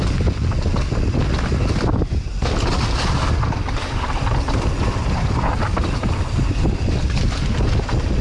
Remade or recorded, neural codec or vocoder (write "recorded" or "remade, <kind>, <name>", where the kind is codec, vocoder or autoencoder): recorded